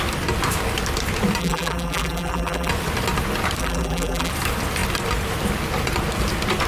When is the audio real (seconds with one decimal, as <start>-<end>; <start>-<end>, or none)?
0.0-1.4; 2.7-3.6; 4.3-6.7